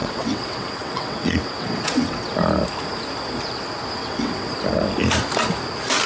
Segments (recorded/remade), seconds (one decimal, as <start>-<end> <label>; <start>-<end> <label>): 0.0-2.3 remade; 2.3-4.0 recorded; 4.0-4.5 remade; 4.5-6.1 recorded